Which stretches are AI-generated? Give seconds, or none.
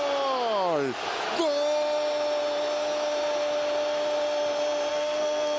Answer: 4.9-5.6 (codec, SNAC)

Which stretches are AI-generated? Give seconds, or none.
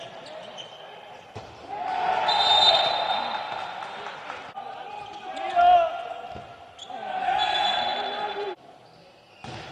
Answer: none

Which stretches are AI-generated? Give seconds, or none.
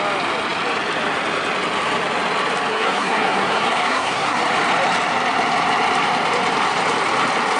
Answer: 2.7-4.4 (codec, SNAC)